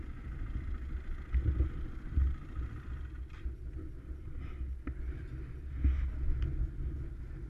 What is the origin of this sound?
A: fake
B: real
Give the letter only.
B